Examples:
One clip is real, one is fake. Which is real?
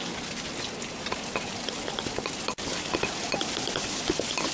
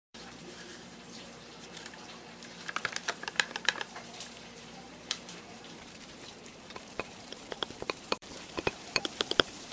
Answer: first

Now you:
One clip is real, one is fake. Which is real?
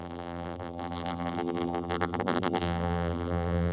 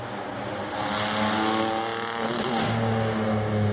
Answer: second